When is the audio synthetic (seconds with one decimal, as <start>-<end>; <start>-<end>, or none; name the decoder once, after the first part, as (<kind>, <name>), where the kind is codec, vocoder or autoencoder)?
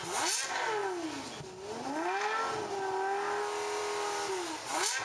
none